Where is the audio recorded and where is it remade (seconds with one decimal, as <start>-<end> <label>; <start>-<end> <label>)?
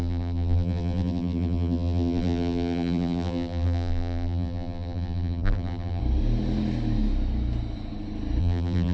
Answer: 0.0-6.0 remade; 6.0-8.4 recorded; 8.4-8.9 remade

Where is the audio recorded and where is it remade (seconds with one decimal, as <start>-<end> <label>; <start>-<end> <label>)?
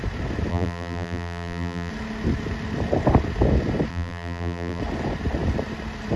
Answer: 0.0-0.5 recorded; 0.5-1.9 remade; 1.9-3.9 recorded; 3.9-4.8 remade; 4.8-6.2 recorded